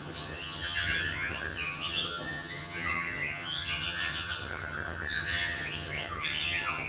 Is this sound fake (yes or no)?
yes